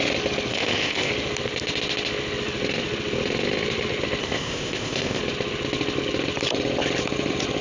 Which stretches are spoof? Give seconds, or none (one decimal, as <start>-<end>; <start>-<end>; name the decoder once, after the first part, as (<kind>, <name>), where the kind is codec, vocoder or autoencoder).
0.5-1.1 (codec, ZipCodec); 4.2-5.2